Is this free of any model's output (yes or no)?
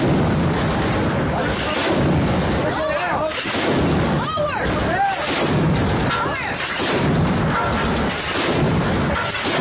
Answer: yes